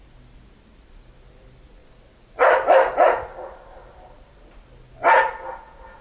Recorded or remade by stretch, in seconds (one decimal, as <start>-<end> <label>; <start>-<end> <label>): 0.0-6.0 recorded